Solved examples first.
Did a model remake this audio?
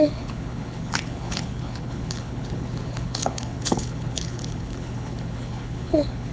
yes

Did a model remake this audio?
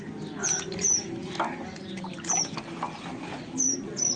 no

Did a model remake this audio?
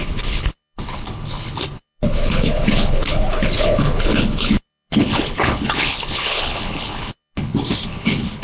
yes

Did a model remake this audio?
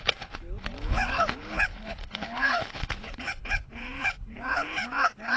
yes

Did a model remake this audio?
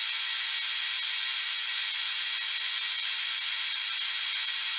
no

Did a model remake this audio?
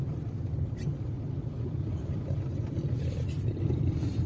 no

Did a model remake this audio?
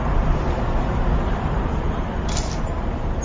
no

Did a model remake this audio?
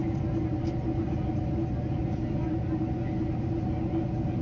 no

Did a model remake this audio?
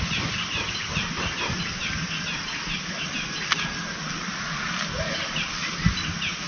no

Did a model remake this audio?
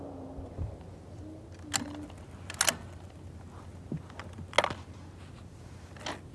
no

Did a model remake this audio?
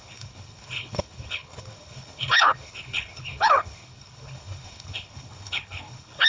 yes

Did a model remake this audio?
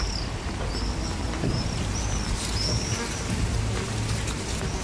no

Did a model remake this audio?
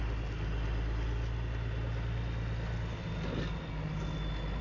no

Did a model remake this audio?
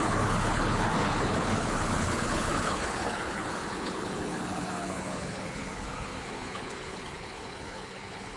yes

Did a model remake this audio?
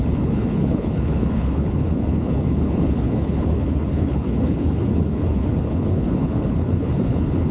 yes